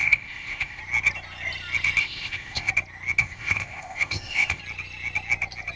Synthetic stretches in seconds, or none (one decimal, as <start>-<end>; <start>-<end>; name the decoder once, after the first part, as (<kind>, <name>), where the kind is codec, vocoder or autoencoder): 0.0-0.8 (codec, ZipCodec); 2.0-2.7; 3.2-4.6